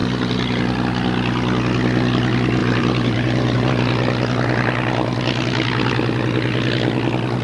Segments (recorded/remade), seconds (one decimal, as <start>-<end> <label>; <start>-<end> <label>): 0.0-0.6 remade; 0.6-2.6 recorded; 2.6-3.7 remade; 3.7-7.4 recorded